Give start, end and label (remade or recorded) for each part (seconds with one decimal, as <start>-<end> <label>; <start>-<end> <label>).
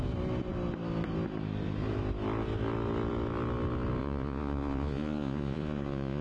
0.0-4.0 recorded; 4.0-6.2 remade